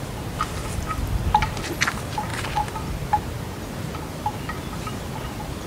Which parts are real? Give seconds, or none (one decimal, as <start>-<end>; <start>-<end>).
0.0-5.7